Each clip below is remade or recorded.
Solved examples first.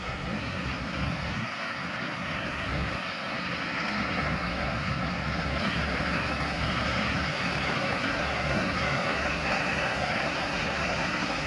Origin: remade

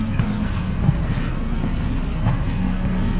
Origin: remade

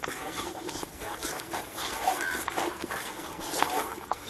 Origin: remade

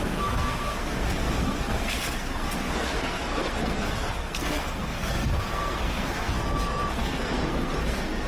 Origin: remade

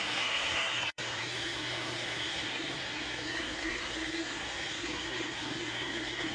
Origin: remade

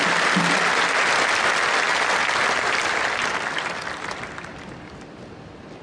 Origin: recorded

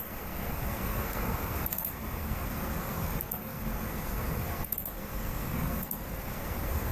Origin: remade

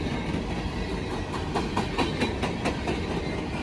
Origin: recorded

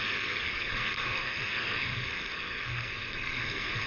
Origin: remade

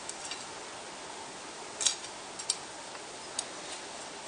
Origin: recorded